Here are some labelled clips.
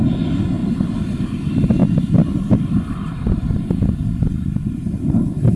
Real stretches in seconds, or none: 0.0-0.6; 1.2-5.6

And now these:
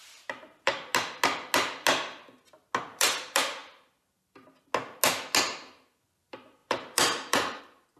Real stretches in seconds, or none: 0.9-2.8; 3.6-5.4

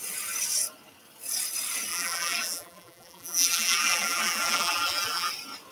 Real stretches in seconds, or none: 0.0-1.9; 5.3-5.7

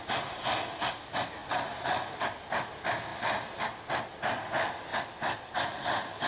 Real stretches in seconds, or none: 0.0-6.3

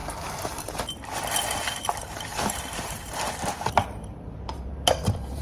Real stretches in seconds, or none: 0.8-2.0